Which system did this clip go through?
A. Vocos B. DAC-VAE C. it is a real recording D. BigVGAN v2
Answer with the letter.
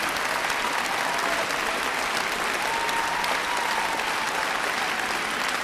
C